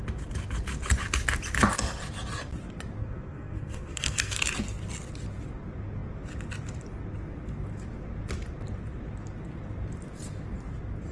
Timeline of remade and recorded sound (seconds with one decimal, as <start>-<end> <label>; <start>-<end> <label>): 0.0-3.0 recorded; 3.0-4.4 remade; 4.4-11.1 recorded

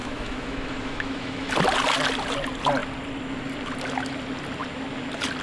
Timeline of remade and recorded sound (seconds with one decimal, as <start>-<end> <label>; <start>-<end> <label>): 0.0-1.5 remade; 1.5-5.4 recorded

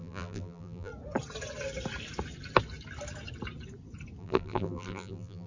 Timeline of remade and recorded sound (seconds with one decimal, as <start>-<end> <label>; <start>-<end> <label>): 0.0-0.9 remade; 0.9-4.2 recorded; 4.2-5.5 remade